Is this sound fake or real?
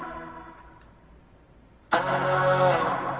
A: real